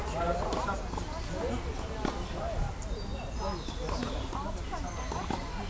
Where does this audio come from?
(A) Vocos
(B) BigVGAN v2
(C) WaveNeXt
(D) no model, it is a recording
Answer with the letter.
D